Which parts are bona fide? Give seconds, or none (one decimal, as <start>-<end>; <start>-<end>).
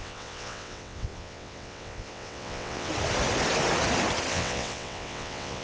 2.9-4.3